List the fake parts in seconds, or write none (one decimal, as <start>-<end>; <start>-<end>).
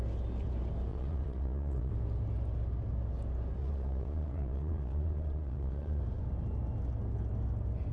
0.9-1.9; 3.6-6.0